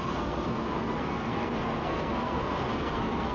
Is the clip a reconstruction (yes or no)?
yes